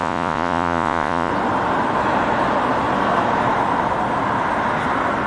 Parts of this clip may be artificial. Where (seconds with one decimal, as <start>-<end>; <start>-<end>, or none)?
0.0-1.3